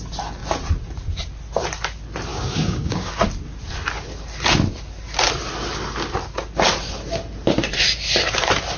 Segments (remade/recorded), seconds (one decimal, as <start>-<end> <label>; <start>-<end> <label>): 0.0-2.3 recorded; 2.3-3.1 remade; 3.1-8.8 recorded